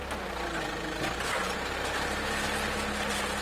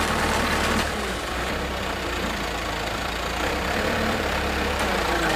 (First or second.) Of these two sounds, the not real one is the second